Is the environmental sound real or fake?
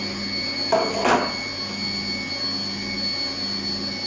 real